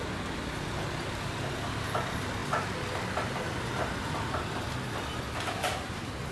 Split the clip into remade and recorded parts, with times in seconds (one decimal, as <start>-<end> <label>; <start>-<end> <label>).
0.0-6.3 recorded